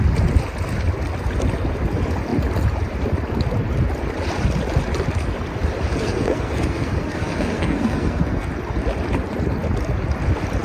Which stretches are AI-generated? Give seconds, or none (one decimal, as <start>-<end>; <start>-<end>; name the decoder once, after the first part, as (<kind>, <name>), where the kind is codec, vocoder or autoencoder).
5.9-8.5 (codec, SNAC)